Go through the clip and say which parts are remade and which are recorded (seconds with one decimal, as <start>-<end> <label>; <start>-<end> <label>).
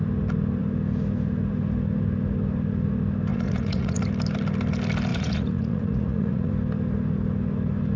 0.0-3.3 recorded; 3.3-4.0 remade; 4.0-5.1 recorded; 5.1-6.5 remade; 6.5-8.0 recorded